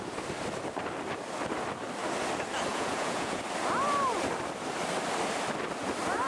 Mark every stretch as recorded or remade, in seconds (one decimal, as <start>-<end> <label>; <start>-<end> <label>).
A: 0.0-2.7 recorded; 2.7-3.4 remade; 3.4-6.3 recorded